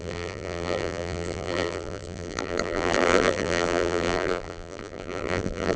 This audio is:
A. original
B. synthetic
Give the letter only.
B